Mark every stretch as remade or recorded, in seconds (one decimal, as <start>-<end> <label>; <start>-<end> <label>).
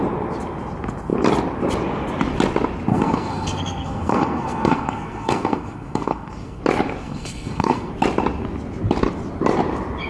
0.0-2.9 recorded; 2.9-6.6 remade; 6.6-7.0 recorded; 7.0-7.9 remade; 7.9-10.1 recorded